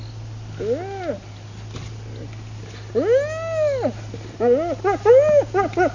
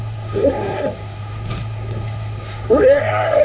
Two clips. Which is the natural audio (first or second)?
first